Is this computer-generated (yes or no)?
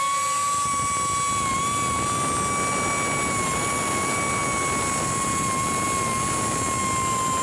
no